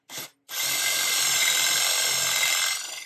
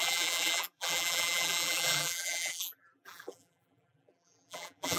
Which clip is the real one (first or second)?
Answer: first